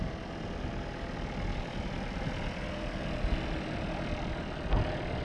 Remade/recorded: recorded